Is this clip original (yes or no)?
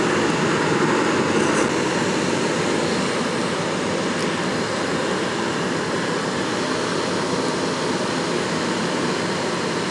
yes